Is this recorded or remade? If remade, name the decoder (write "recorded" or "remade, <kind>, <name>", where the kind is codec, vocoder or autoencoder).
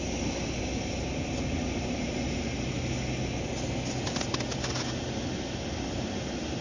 recorded